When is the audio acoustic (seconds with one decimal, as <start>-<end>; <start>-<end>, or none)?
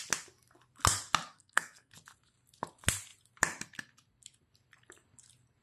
0.0-1.3; 1.9-5.6